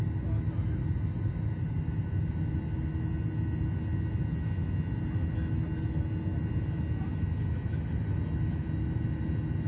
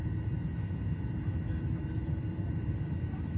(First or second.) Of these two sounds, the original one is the first